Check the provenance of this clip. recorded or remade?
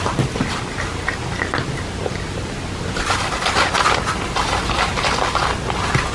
recorded